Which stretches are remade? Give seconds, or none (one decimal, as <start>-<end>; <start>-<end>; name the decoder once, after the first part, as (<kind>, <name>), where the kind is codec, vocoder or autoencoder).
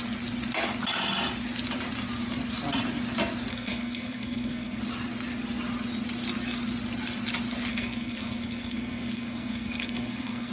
3.5-4.8 (codec, SNAC); 7.7-10.5